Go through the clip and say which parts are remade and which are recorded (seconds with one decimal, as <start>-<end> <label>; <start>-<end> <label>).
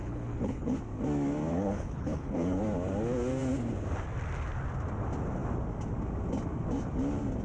0.0-0.8 remade; 0.8-1.5 recorded; 1.5-2.6 remade; 2.6-7.4 recorded